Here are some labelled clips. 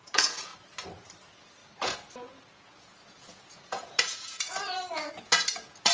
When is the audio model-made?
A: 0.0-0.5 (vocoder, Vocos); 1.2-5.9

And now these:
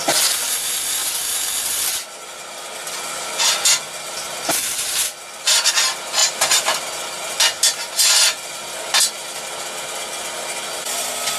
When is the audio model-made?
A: none

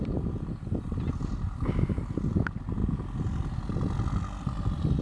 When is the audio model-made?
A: none

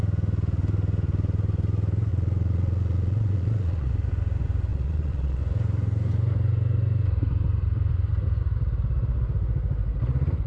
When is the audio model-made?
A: 2.1-3.9 (vocoder, Vocos); 4.7-5.4

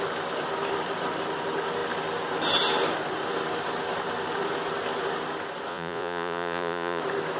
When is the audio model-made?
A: 5.7-7.0 (vocoder, Vocos)